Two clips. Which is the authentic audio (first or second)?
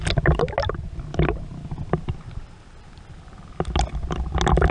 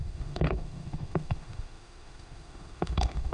first